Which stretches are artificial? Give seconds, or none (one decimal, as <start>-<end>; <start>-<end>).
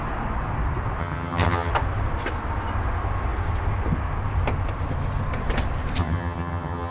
1.0-1.7; 6.0-6.9